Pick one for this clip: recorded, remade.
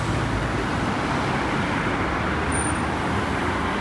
recorded